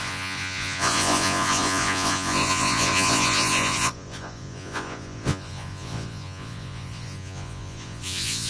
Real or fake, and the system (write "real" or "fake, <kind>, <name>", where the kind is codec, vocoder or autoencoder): fake, vocoder, Vocos